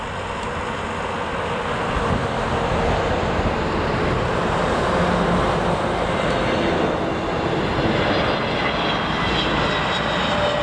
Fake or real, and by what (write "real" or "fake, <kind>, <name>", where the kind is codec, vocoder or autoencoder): real